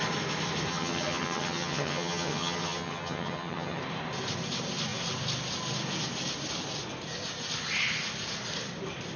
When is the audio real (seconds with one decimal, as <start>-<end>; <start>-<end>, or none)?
0.0-0.7; 3.8-9.2